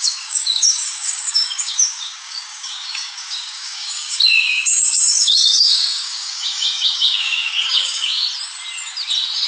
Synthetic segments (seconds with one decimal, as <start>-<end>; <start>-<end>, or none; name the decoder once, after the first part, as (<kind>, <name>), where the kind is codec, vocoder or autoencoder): 0.0-8.2 (codec, DAC)